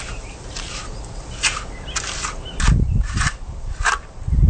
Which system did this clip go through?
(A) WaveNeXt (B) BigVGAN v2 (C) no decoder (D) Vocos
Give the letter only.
C